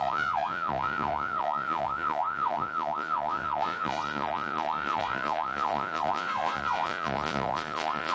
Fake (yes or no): yes